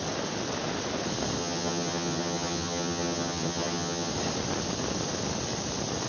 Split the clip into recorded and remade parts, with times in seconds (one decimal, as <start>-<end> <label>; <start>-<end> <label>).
0.0-1.4 recorded; 1.4-4.1 remade; 4.1-6.1 recorded